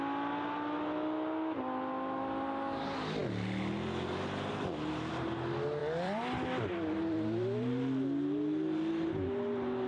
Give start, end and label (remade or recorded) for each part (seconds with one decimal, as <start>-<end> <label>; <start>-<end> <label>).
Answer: 0.0-5.8 recorded; 5.8-6.7 remade; 6.7-9.9 recorded